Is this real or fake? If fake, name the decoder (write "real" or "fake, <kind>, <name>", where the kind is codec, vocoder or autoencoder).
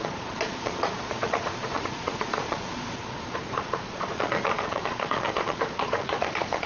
fake, vocoder, Vocos